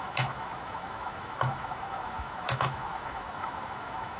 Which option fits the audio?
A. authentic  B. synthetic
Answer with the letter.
B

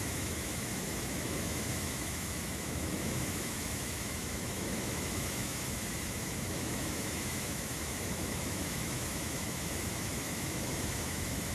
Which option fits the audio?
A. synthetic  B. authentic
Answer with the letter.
A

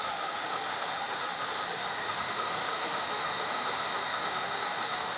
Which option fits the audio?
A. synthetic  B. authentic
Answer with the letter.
A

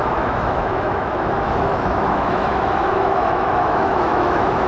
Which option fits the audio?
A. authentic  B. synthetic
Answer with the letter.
B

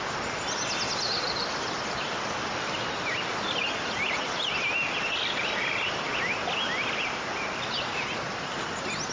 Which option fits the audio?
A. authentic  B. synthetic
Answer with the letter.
A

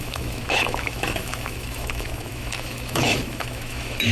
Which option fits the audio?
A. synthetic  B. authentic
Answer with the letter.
A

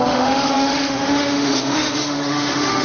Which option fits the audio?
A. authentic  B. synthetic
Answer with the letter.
B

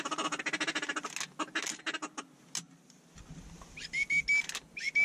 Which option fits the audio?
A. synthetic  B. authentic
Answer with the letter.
B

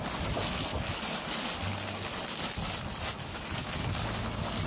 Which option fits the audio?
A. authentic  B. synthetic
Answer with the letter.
A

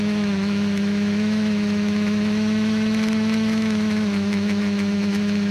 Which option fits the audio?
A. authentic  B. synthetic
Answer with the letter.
B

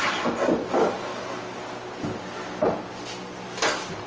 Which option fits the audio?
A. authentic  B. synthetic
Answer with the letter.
A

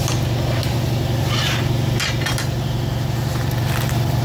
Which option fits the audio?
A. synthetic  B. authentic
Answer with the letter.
B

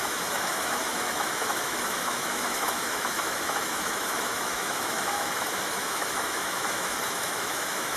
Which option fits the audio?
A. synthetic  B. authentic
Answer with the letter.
A